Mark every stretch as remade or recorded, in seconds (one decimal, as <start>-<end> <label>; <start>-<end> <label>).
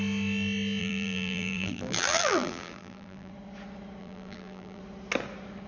0.0-0.8 recorded; 0.8-3.3 remade; 3.3-4.0 recorded; 4.0-4.8 remade; 4.8-5.7 recorded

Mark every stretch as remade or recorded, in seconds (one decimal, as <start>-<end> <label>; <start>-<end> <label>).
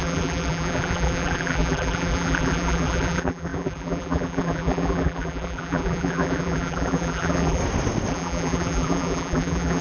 0.0-7.6 remade; 7.6-8.1 recorded; 8.1-9.8 remade